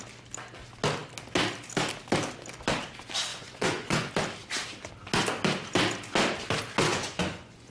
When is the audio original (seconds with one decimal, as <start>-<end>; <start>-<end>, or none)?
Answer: 0.0-3.3; 4.1-6.9